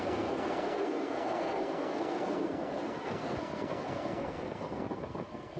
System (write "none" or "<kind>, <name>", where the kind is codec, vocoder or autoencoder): codec, SNAC